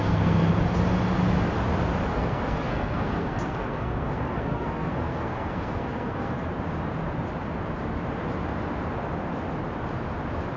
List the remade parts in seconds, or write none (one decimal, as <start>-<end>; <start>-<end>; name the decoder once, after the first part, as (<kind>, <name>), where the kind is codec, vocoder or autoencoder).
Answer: 0.0-0.5 (codec, SNAC); 2.1-6.5

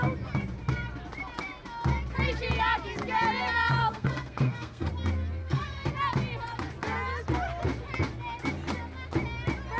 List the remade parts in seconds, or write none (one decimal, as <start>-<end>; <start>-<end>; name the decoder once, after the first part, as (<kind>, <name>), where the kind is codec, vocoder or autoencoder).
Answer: 3.8-4.9 (codec, SNAC); 5.4-5.9

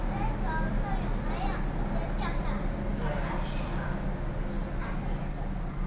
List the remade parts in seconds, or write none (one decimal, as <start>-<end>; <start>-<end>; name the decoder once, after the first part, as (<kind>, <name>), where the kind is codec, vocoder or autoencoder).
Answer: none

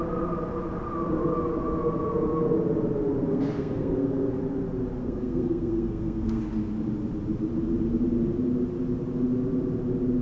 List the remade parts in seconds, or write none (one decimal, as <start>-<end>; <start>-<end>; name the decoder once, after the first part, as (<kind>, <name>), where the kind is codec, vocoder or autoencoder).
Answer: 3.3-4.4 (codec, SNAC); 5.0-6.4

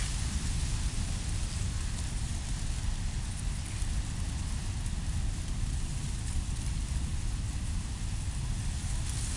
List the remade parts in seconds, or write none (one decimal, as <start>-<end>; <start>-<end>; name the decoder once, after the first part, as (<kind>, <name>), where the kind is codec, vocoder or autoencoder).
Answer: none